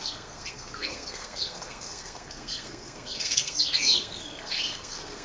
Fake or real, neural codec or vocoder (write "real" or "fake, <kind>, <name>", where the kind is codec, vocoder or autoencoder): fake, codec, SNAC